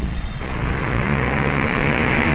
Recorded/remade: remade